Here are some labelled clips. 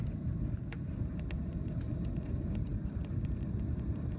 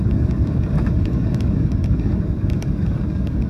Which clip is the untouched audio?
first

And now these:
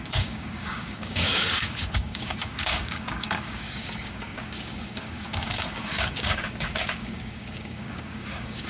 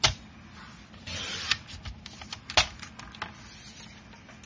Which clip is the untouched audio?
second